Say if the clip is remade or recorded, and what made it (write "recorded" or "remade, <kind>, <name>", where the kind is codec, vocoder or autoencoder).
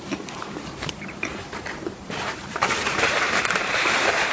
remade, vocoder, BigVGAN v2